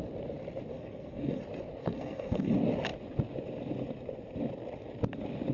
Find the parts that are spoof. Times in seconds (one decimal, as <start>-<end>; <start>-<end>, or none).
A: 0.7-1.4; 1.8-2.5